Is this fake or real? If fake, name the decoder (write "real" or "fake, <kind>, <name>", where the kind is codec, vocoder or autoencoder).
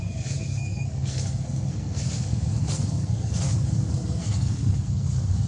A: fake, codec, SNAC